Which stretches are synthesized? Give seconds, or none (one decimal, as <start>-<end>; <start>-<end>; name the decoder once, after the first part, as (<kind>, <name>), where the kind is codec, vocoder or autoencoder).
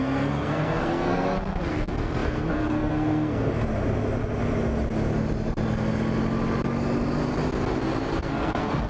0.0-3.5 (codec, SNAC); 8.2-8.9